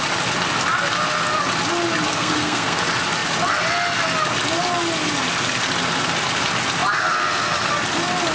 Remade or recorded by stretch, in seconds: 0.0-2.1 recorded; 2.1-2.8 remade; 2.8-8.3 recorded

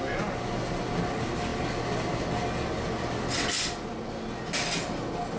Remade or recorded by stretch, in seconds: 0.0-5.4 recorded

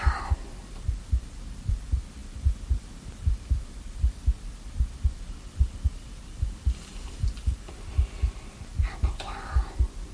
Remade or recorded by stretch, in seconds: 0.0-10.1 recorded

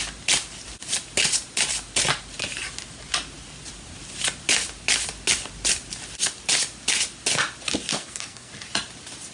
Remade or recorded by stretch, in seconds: 0.0-7.9 recorded; 7.9-8.5 remade; 8.5-9.3 recorded

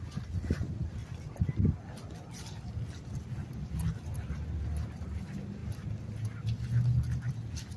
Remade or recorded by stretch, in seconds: 0.0-7.8 recorded

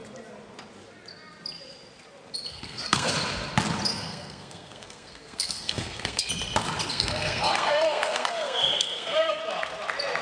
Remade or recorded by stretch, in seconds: 0.0-2.5 recorded; 2.5-3.1 remade; 3.1-3.9 recorded; 3.9-6.3 remade; 6.3-6.9 recorded; 6.9-9.4 remade; 9.4-10.2 recorded